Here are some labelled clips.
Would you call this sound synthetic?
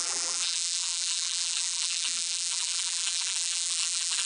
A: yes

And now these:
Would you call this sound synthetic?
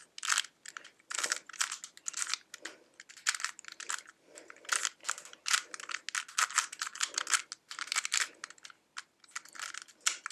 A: no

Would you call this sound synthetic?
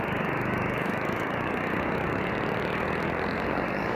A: yes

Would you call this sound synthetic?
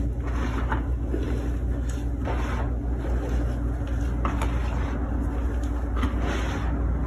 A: no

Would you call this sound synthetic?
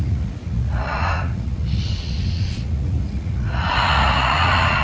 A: yes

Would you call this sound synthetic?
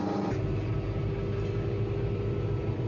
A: no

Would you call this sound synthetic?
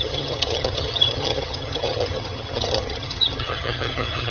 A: yes